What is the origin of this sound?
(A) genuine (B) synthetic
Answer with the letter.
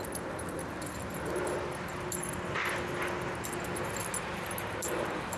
A